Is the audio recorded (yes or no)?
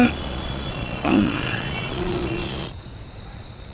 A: no